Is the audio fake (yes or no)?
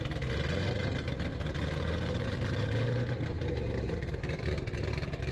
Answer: yes